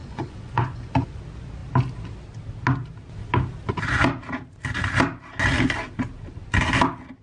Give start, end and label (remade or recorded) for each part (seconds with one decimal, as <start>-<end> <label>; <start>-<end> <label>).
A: 0.0-1.2 remade; 1.2-7.2 recorded

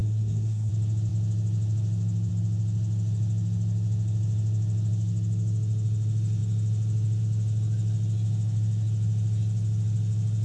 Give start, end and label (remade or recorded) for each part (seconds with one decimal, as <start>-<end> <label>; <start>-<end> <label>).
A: 0.0-0.7 remade; 0.7-10.4 recorded

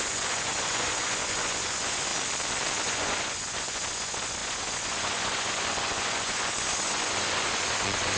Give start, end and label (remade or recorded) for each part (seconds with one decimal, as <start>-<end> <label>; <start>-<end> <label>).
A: 0.0-2.1 remade; 2.1-2.8 recorded; 2.8-8.2 remade

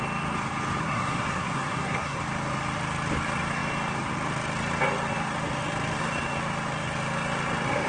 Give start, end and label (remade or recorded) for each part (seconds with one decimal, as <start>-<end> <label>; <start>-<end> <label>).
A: 0.0-0.8 recorded; 0.8-2.2 remade; 2.2-7.9 recorded

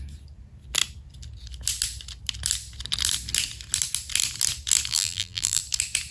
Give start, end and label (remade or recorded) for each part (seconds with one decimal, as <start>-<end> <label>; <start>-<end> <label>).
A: 0.0-4.9 recorded; 4.9-5.6 remade; 5.6-6.1 recorded

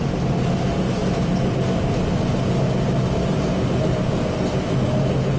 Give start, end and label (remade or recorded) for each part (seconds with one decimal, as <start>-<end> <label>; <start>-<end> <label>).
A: 0.0-5.4 recorded

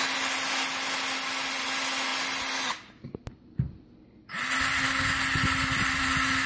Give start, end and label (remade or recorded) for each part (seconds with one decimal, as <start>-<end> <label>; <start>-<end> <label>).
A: 0.0-6.5 recorded

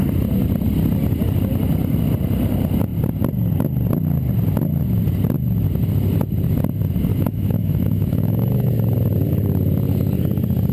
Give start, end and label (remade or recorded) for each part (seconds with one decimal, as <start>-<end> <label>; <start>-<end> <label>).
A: 0.0-7.1 recorded; 7.1-8.7 remade; 8.7-10.7 recorded